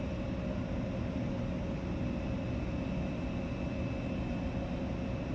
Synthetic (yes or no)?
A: no